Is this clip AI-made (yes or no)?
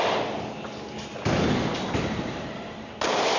no